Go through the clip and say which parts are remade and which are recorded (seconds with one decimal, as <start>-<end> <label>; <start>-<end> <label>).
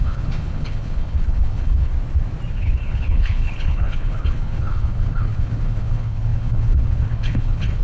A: 0.0-1.9 remade; 1.9-2.5 recorded; 2.5-7.8 remade